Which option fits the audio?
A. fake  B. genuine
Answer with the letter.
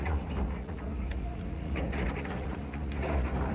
A